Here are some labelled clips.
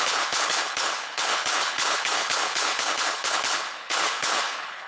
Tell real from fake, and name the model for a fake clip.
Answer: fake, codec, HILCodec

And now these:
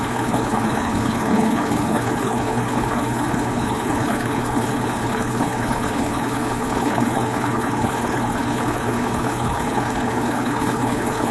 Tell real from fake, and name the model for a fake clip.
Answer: fake, codec, HILCodec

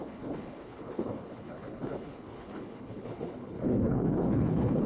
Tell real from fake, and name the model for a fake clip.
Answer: fake, codec, HILCodec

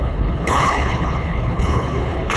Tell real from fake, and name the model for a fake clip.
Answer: fake, codec, HILCodec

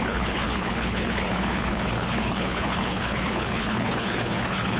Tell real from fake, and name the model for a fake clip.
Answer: fake, codec, HILCodec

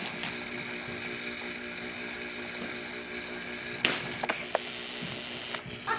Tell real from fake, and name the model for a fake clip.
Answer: real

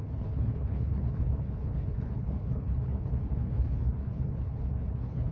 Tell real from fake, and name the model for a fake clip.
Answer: fake, codec, HILCodec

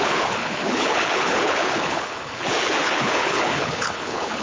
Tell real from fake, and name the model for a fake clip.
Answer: fake, codec, HILCodec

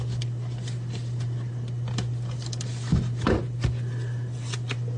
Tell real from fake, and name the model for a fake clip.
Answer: real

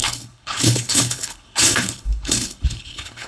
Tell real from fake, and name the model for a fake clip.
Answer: fake, codec, HILCodec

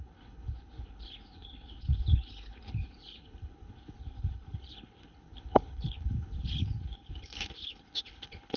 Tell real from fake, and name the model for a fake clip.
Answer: fake, codec, HILCodec